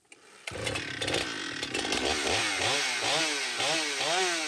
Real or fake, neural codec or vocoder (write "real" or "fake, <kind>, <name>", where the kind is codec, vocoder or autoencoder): real